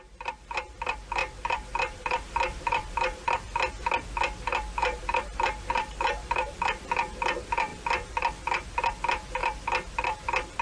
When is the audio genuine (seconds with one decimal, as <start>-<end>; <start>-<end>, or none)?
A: 0.0-1.2; 3.3-4.8; 6.8-10.6